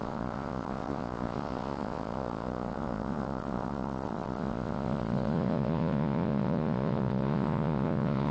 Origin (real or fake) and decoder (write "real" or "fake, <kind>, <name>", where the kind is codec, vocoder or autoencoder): fake, vocoder, Vocos